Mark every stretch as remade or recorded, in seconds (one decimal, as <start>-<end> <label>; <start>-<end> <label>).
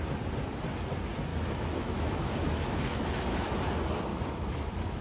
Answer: 0.0-1.3 recorded; 1.3-3.5 remade; 3.5-4.1 recorded; 4.1-5.0 remade